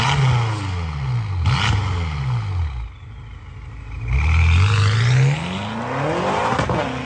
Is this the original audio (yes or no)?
yes